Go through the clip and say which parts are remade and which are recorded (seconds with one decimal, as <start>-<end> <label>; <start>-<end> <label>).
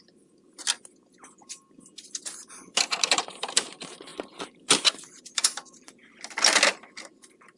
0.0-0.6 remade; 0.6-2.2 recorded; 2.2-6.0 remade; 6.0-6.7 recorded; 6.7-7.6 remade